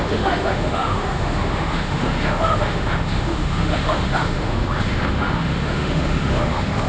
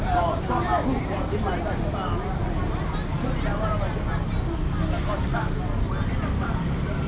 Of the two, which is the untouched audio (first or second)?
second